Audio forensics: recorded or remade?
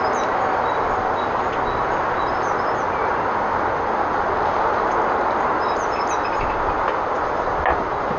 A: recorded